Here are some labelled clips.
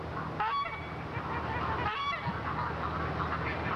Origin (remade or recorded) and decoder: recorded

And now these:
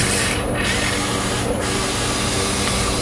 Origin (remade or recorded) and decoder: remade, vocoder, BigVGAN v2